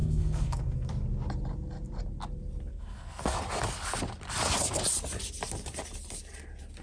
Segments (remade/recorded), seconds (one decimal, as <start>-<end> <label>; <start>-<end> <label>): 0.0-0.9 remade; 0.9-2.7 recorded; 2.7-3.4 remade; 3.4-6.8 recorded

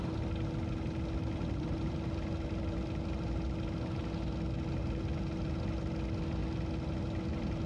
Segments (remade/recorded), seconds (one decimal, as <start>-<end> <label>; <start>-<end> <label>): 0.0-7.7 recorded

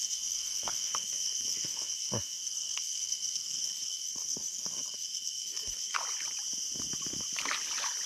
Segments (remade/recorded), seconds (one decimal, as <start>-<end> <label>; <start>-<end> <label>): 0.0-6.0 remade; 6.0-8.1 recorded

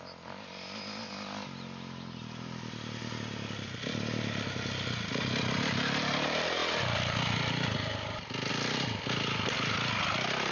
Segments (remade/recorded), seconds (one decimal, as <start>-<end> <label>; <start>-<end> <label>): 0.0-10.5 recorded